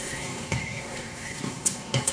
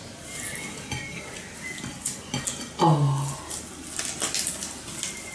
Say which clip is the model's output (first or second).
first